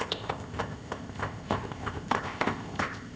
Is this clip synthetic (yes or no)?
yes